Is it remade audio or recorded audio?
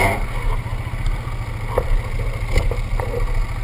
recorded